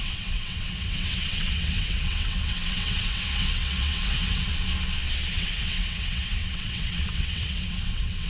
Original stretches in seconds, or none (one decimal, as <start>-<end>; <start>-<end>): 4.5-5.3